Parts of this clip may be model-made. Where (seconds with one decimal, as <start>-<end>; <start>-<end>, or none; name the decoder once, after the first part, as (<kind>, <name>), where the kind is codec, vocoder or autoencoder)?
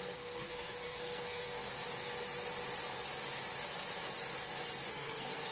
0.0-1.6 (codec, SNAC); 4.9-5.5